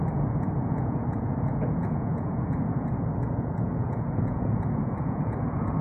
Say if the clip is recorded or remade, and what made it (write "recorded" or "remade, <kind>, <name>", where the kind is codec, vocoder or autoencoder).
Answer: remade, vocoder, Vocos